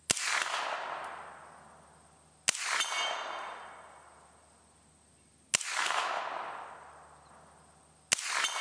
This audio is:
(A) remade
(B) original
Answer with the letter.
B